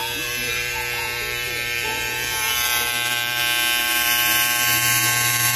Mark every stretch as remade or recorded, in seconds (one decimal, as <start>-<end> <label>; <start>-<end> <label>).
0.0-3.4 remade; 3.4-3.8 recorded; 3.8-5.6 remade